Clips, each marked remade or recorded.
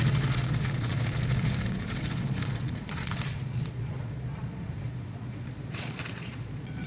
remade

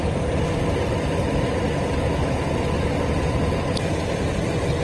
recorded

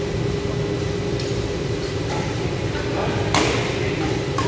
recorded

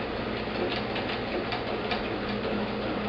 recorded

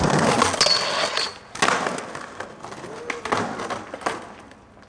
recorded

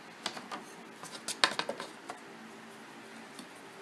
recorded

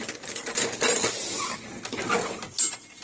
recorded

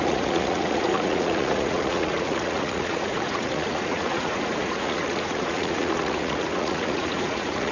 remade